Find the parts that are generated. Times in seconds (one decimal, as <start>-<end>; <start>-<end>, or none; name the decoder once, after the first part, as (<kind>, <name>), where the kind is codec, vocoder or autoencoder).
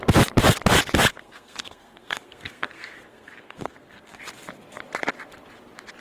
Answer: 1.1-4.2 (codec, SNAC)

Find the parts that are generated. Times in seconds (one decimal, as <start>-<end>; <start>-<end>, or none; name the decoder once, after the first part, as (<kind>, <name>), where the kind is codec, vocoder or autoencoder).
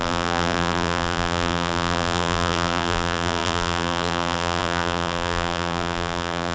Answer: 0.0-6.5 (vocoder, BigVGAN v2)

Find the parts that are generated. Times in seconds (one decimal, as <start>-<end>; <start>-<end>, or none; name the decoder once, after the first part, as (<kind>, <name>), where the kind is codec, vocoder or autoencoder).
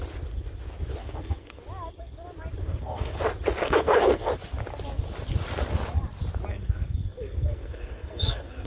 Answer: 1.0-1.6 (codec, SNAC); 2.6-3.2; 3.6-4.3; 6.5-8.7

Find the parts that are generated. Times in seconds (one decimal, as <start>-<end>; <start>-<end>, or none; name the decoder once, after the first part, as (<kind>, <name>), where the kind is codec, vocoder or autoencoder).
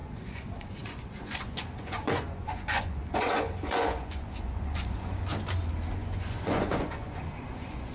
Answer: 0.0-5.3 (vocoder, Vocos); 5.9-7.9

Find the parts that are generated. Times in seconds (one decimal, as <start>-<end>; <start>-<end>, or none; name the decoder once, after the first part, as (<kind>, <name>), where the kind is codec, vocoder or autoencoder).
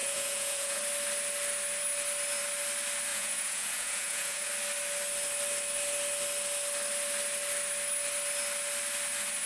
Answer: 0.0-0.8 (vocoder, Vocos); 3.1-4.5